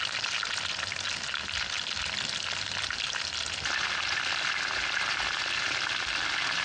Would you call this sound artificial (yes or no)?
no